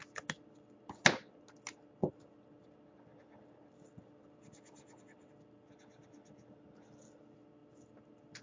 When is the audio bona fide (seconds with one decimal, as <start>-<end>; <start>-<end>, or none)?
0.0-8.4